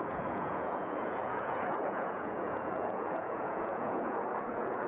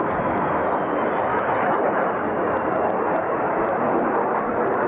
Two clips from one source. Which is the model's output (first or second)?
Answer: first